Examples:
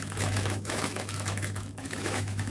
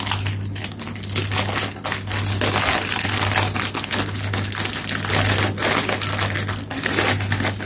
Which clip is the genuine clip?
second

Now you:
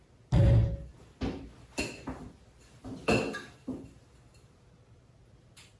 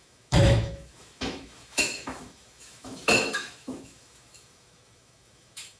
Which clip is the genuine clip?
first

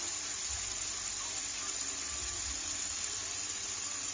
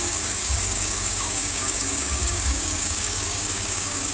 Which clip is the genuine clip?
first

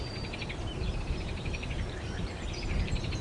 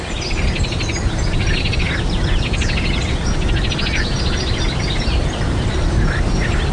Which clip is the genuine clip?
second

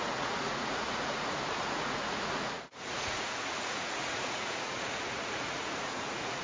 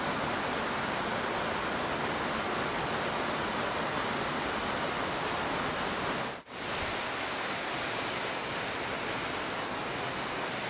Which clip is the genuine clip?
second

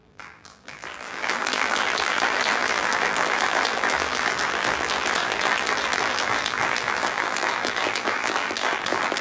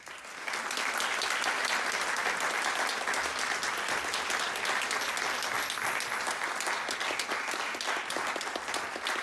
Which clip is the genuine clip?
second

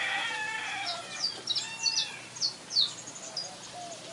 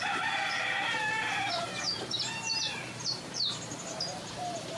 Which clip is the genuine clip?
first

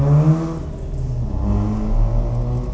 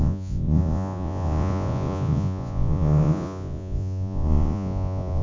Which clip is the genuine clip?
first